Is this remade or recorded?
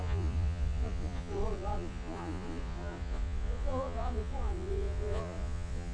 remade